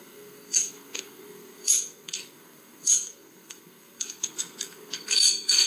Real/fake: fake